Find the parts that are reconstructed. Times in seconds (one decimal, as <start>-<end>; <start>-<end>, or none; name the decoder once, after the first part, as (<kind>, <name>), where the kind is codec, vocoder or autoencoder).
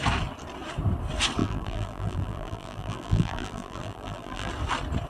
1.4-4.5 (vocoder, BigVGAN v2)